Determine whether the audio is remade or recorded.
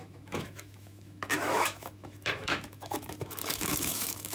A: remade